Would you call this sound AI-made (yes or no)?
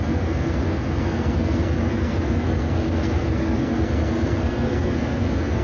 yes